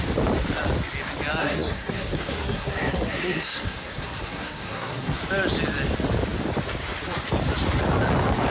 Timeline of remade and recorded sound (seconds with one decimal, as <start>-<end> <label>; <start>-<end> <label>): 0.0-1.4 recorded; 1.4-5.2 remade; 5.2-8.5 recorded